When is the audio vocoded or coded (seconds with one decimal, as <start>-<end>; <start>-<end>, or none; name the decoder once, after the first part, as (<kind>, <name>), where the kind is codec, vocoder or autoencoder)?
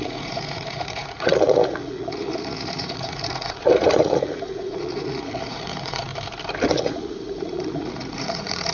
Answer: 0.0-6.1 (vocoder, Vocos); 6.7-8.7